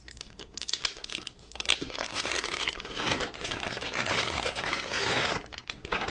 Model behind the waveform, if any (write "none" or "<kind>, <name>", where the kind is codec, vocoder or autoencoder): codec, SNAC